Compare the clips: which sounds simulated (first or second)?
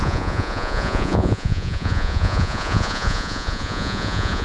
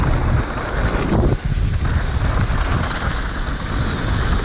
first